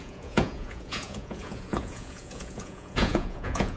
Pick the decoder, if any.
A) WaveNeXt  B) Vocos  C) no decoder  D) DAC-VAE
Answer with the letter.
B